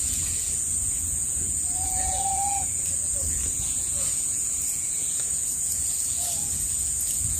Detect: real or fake fake